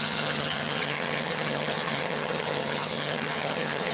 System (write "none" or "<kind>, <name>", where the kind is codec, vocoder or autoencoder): vocoder, HiFi-GAN